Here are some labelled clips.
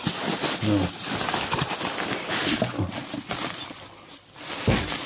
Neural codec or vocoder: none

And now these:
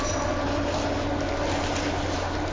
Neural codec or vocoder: none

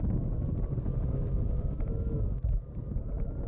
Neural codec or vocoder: none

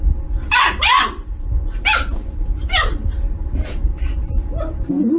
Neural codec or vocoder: vocoder, BigVGAN v2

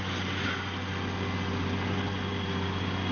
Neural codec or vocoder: none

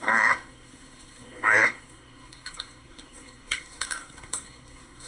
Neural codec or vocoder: codec, SNAC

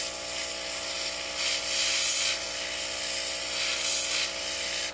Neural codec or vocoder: none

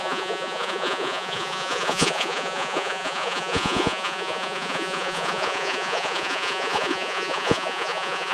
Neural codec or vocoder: vocoder, Vocos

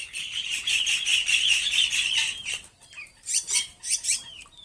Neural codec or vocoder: vocoder, BigVGAN v2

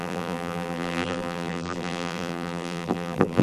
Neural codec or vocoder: vocoder, BigVGAN v2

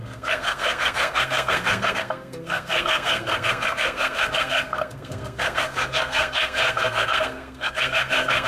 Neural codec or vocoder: codec, SNAC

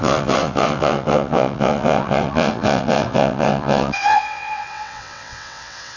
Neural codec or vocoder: vocoder, WaveNeXt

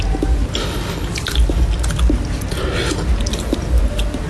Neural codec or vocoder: none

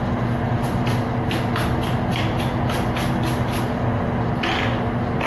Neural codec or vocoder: none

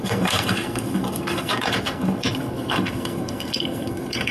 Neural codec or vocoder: codec, SNAC